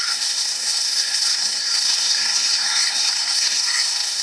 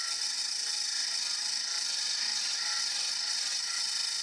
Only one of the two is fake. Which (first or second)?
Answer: first